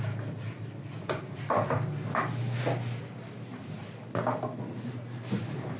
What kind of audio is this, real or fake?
real